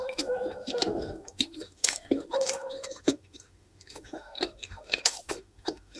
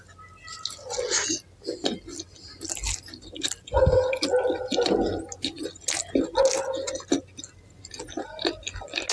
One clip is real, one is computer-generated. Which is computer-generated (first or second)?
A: first